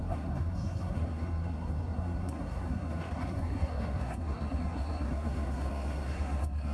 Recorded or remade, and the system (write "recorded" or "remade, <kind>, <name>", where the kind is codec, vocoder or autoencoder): remade, codec, SNAC